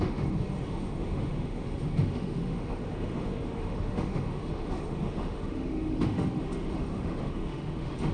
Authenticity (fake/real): fake